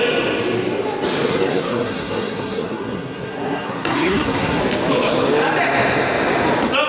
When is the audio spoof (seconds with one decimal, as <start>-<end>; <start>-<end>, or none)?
1.3-4.6

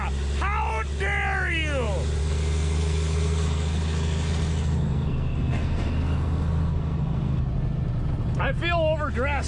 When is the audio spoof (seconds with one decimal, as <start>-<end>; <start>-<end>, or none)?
2.2-7.4